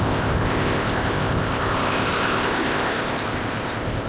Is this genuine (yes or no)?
no